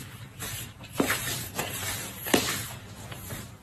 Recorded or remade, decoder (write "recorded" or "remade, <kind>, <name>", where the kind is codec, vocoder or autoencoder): remade, vocoder, BigVGAN v2